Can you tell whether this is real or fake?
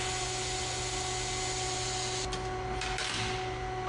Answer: real